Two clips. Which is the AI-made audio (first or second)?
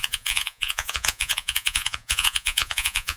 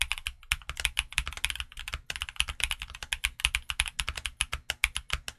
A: first